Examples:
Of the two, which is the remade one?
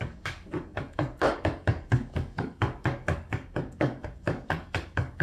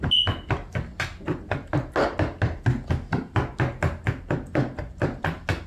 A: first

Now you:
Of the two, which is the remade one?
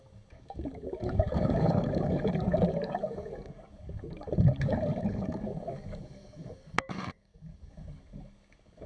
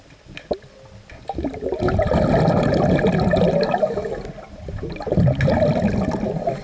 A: first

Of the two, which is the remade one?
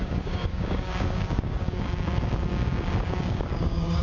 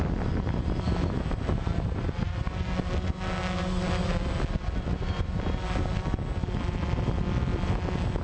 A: first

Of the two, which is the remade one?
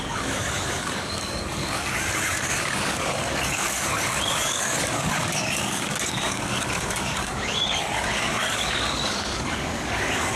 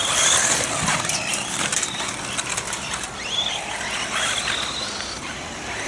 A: first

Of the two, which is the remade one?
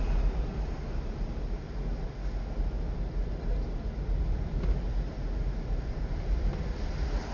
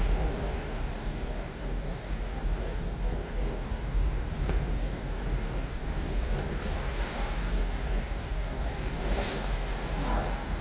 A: second